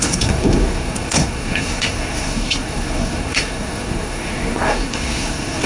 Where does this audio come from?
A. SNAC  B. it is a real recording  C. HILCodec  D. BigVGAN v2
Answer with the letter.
A